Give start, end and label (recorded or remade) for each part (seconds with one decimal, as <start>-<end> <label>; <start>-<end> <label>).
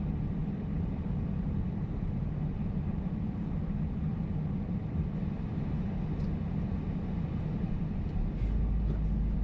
0.0-9.4 recorded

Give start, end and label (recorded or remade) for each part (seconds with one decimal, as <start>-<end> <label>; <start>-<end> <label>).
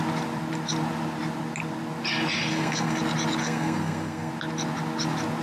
0.0-2.5 recorded; 2.5-3.0 remade; 3.0-3.4 recorded; 3.4-4.3 remade; 4.3-5.4 recorded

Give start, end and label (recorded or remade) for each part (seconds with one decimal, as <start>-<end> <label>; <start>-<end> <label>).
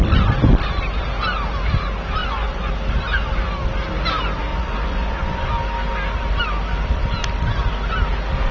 0.0-2.2 recorded; 2.2-2.7 remade; 2.7-4.5 recorded; 4.5-5.5 remade; 5.5-8.5 recorded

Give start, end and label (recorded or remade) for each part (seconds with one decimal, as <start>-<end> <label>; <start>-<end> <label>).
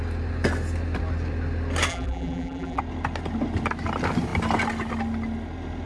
0.0-1.9 recorded; 1.9-2.8 remade; 2.8-5.9 recorded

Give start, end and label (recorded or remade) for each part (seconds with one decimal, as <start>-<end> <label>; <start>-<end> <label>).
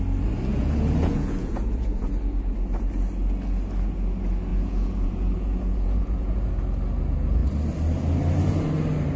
0.0-0.5 recorded; 0.5-2.1 remade; 2.1-4.5 recorded; 4.5-6.5 remade; 6.5-9.2 recorded